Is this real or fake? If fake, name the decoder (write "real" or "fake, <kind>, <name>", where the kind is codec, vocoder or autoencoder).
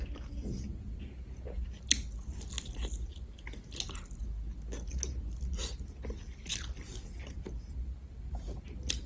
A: real